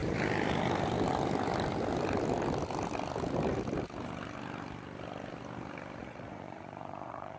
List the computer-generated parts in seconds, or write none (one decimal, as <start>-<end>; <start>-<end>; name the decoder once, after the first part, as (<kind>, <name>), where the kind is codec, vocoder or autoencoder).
6.0-7.4 (vocoder, Vocos)

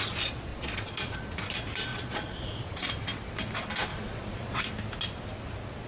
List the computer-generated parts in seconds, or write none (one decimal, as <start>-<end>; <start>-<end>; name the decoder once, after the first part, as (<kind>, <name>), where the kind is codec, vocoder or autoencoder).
0.5-1.2 (vocoder, Vocos); 1.9-2.9; 3.9-4.6

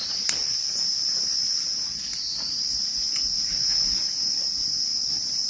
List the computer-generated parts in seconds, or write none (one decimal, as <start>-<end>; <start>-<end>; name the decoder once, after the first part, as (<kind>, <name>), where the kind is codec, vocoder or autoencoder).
none

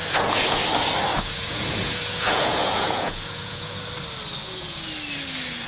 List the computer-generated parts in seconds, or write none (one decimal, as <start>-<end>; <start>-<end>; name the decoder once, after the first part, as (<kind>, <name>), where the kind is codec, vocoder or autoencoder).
0.0-0.6 (vocoder, Vocos); 1.1-3.9; 4.4-4.9

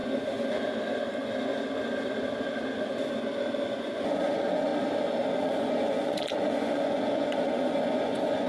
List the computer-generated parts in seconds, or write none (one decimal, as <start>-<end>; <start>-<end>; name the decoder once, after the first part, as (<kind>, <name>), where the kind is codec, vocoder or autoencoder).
3.7-4.7 (vocoder, Vocos); 5.4-8.5

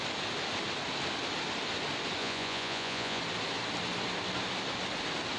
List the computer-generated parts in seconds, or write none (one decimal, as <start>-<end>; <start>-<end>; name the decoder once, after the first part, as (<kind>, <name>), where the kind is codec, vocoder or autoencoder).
2.2-3.2 (vocoder, Vocos)

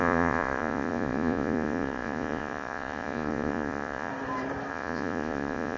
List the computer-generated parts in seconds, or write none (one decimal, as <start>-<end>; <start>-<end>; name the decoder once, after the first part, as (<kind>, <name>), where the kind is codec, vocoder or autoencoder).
0.0-4.1 (vocoder, Vocos); 4.7-5.8

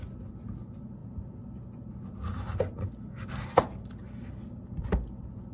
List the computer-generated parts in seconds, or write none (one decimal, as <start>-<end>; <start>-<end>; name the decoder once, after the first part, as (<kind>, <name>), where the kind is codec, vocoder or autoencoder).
none